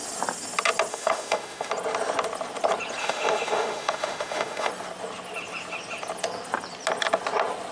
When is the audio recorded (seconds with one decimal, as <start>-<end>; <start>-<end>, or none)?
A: 0.0-0.9; 1.7-3.0; 4.7-7.7